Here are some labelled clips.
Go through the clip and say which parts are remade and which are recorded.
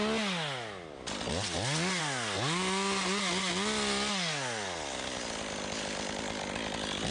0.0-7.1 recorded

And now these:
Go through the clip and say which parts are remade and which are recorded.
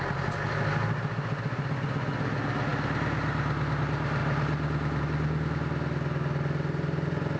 0.0-7.4 recorded